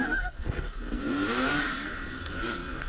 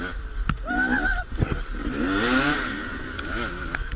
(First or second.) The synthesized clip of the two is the first